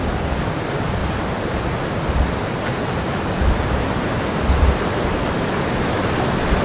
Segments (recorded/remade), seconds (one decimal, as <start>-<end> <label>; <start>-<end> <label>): 0.0-6.6 recorded